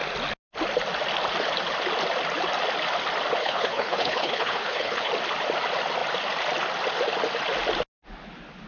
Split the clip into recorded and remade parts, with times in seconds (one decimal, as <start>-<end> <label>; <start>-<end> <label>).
0.0-3.4 recorded; 3.4-5.1 remade; 5.1-8.7 recorded